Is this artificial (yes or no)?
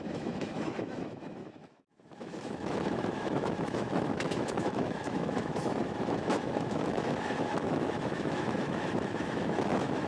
yes